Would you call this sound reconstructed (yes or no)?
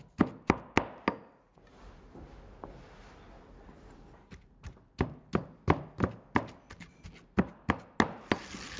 no